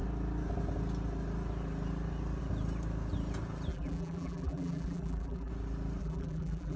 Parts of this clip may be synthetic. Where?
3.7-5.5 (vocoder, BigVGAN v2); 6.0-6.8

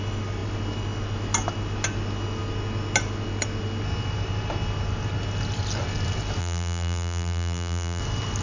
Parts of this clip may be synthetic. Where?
6.4-8.0 (vocoder, BigVGAN v2)

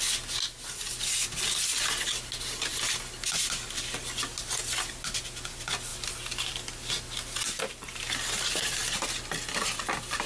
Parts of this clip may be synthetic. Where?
none

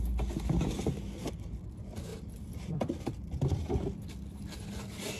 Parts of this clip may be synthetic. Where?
2.1-4.1 (vocoder, BigVGAN v2)